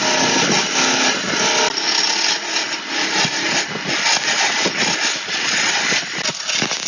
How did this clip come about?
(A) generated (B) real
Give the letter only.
B